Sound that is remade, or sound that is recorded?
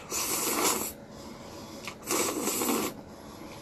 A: recorded